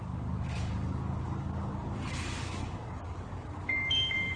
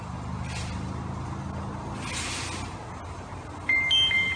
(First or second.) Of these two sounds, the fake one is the first